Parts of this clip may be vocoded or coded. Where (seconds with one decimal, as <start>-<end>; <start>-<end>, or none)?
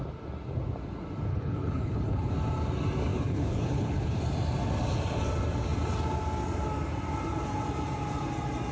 1.3-2.3; 3.1-4.2